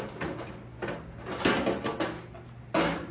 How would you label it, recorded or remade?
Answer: recorded